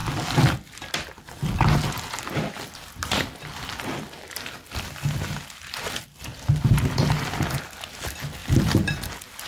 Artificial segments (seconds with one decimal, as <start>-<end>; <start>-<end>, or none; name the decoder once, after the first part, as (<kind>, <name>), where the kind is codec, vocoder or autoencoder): 0.0-4.8 (vocoder, BigVGAN v2); 6.3-7.2; 8.4-9.5